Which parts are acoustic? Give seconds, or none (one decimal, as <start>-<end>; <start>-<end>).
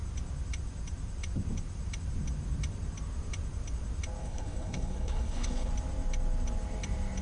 0.0-4.2; 5.7-7.2